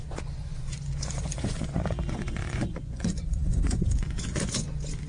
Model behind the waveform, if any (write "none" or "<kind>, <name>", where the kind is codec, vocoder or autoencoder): vocoder, Vocos